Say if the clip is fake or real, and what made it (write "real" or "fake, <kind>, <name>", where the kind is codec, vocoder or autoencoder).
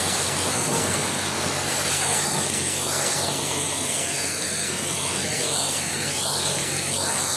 fake, codec, SNAC